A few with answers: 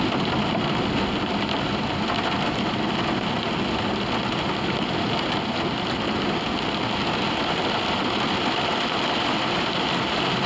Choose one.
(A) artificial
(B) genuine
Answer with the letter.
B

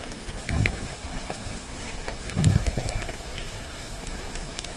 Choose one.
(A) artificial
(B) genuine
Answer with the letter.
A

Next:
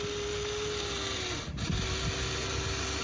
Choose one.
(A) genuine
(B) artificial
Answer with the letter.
A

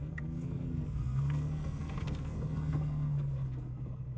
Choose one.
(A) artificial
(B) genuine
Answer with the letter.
A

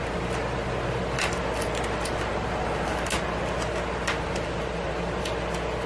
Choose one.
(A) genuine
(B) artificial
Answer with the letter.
A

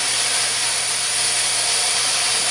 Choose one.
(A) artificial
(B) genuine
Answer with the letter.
B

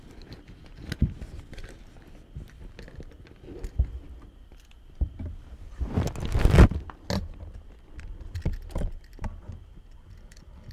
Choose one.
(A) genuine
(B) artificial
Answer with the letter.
A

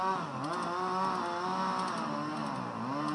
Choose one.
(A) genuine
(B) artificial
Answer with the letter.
A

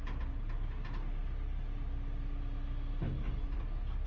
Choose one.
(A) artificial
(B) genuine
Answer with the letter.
B